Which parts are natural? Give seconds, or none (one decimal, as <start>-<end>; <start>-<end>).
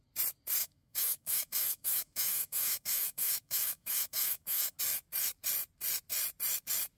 0.0-0.6; 4.8-7.0